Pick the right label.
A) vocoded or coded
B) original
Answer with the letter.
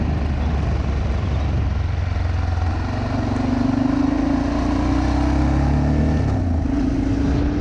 B